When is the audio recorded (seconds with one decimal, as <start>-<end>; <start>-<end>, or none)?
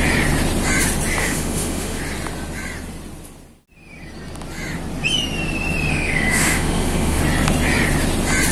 0.0-1.2; 2.0-5.9; 7.2-8.5